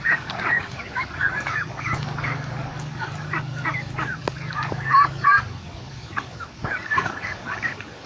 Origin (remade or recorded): remade